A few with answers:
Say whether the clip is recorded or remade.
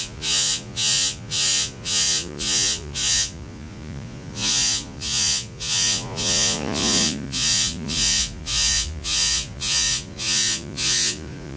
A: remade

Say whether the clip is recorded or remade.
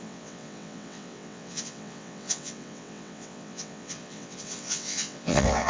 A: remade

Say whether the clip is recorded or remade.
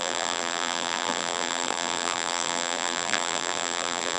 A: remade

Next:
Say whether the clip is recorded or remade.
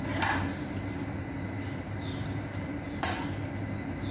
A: recorded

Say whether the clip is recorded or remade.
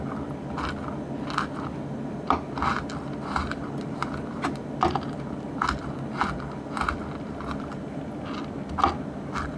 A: recorded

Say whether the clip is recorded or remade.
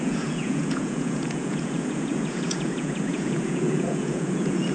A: remade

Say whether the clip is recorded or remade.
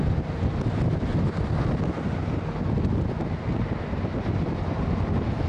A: recorded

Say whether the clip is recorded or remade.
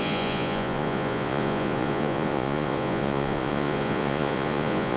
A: remade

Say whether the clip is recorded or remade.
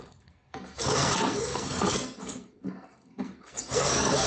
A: remade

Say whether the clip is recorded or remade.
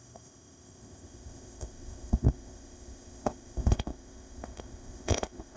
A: remade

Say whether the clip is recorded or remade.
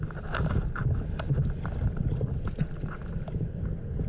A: recorded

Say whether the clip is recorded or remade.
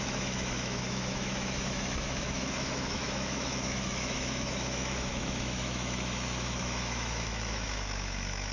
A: remade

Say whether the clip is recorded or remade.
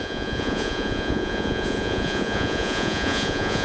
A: remade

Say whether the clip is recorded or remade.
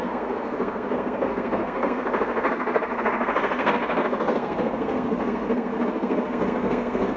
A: remade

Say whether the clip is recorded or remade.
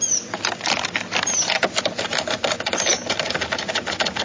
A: recorded